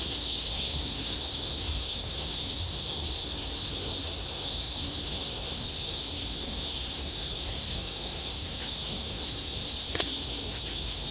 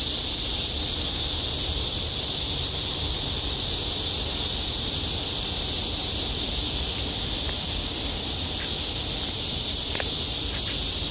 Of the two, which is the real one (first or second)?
second